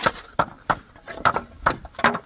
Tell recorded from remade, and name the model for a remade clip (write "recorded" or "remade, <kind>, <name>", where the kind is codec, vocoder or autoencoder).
recorded